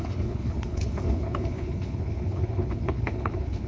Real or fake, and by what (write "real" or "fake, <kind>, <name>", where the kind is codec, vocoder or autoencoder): fake, codec, HILCodec